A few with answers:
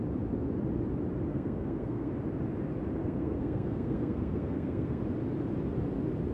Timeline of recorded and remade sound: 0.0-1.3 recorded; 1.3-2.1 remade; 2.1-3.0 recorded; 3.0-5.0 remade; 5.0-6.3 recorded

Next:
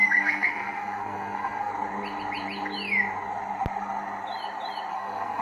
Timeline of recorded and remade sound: 0.0-1.7 remade; 1.7-4.9 recorded; 4.9-5.4 remade

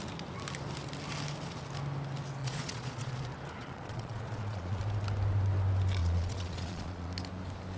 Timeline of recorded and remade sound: 0.0-2.4 recorded; 2.4-3.2 remade; 3.2-3.6 recorded; 3.6-4.8 remade; 4.8-6.0 recorded; 6.0-7.1 remade; 7.1-7.8 recorded

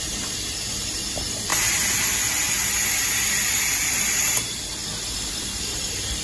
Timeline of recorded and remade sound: 0.0-1.5 remade; 1.5-3.9 recorded; 3.9-6.2 remade